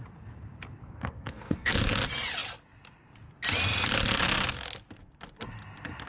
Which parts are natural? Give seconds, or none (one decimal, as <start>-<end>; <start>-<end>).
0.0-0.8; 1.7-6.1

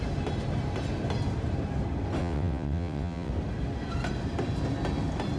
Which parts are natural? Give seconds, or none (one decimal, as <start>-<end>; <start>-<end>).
0.0-2.2; 3.3-5.4

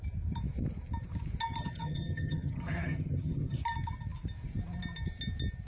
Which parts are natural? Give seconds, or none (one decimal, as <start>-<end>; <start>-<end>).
0.0-1.6; 3.6-5.7

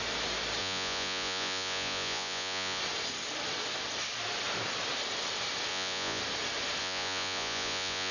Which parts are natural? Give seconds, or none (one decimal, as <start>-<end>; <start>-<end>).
0.0-0.6; 2.8-5.7; 6.2-6.8